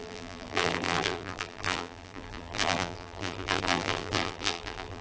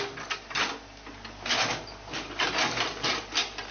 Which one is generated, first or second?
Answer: first